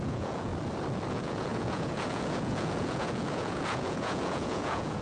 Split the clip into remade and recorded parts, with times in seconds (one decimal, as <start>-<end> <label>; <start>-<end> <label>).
0.0-0.5 remade; 0.5-1.1 recorded; 1.1-5.0 remade